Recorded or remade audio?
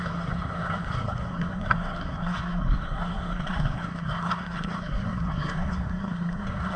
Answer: remade